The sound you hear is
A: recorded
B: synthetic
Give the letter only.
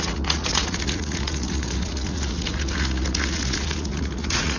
B